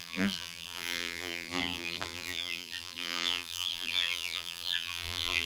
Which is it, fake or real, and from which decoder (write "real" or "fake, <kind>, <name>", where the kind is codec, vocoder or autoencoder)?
fake, vocoder, BigVGAN v2